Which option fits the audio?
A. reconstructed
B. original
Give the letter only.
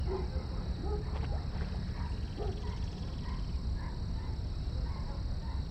B